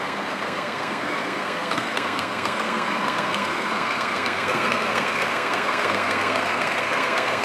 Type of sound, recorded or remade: remade